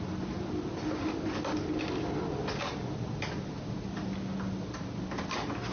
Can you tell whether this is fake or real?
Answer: real